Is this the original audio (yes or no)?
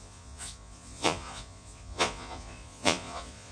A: no